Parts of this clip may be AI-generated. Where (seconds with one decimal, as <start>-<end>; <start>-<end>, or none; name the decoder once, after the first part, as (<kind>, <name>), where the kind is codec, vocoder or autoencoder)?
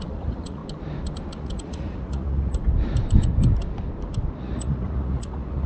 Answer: 0.0-0.6 (vocoder, Vocos); 1.3-2.6; 4.4-5.7